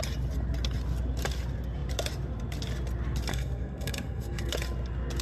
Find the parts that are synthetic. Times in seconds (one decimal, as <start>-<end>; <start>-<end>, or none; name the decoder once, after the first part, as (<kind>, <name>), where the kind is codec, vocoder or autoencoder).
3.3-4.5 (codec, SNAC)